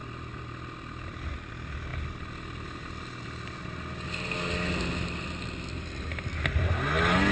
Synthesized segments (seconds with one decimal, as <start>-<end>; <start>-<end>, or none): none